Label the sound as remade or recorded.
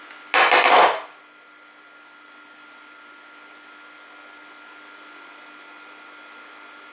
recorded